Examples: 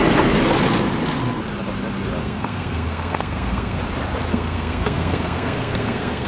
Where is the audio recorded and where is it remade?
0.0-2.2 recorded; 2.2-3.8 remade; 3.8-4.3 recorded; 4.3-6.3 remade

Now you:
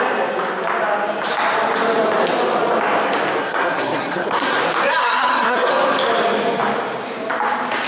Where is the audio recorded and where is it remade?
0.0-3.4 recorded; 3.4-4.6 remade; 4.6-5.0 recorded; 5.0-5.7 remade; 5.7-7.9 recorded

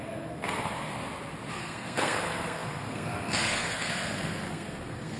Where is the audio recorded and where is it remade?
0.0-0.9 remade; 0.9-1.5 recorded; 1.5-5.2 remade

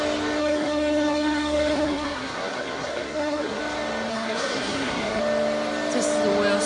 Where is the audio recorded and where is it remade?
0.0-0.4 recorded; 0.4-3.6 remade; 3.6-4.1 recorded; 4.1-5.2 remade; 5.2-6.7 recorded

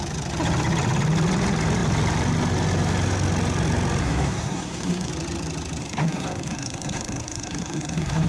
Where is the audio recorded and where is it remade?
0.0-4.0 recorded; 4.0-5.1 remade; 5.1-5.8 recorded; 5.8-8.3 remade

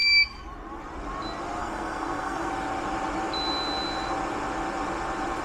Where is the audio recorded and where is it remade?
0.0-1.6 recorded; 1.6-2.5 remade; 2.5-5.4 recorded

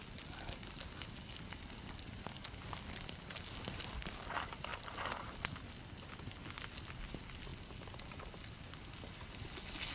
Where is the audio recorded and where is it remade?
0.0-9.9 recorded

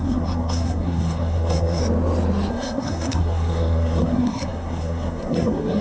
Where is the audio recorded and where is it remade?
0.0-1.8 remade; 1.8-2.5 recorded; 2.5-5.8 remade